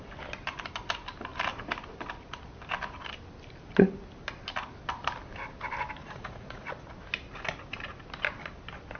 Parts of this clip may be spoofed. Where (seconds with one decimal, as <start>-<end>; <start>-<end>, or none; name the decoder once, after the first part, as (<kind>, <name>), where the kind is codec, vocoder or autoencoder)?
6.0-6.7 (vocoder, Vocos)